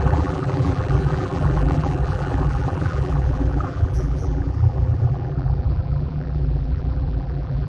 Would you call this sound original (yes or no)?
no